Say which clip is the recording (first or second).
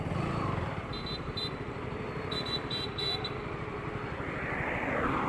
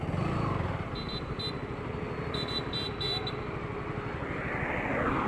second